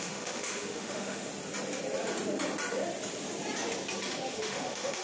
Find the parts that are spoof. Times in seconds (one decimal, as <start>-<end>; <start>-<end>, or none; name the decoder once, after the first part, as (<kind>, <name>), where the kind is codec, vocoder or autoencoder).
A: 0.0-1.3 (autoencoder, DAC-VAE); 4.3-5.0